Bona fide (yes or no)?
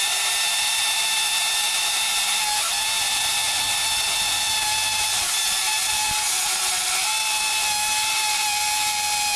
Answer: yes